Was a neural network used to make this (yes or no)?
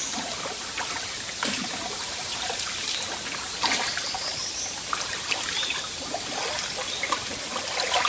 no